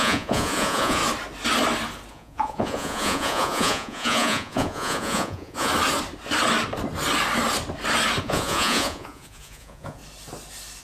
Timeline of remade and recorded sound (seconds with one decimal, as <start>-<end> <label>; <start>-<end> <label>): 0.0-1.0 remade; 1.0-2.1 recorded; 2.1-5.7 remade; 5.7-8.2 recorded; 8.2-10.0 remade; 10.0-10.8 recorded